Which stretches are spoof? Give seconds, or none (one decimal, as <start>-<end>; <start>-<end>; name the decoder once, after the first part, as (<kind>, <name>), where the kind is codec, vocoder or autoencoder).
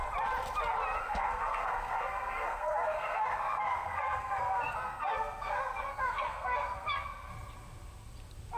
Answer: 1.0-7.3 (codec, SNAC)